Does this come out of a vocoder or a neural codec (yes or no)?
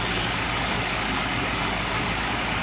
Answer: yes